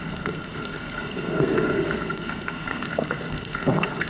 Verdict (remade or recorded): remade